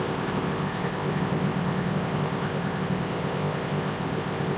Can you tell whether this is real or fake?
fake